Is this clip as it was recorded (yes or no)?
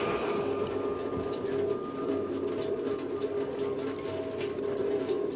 yes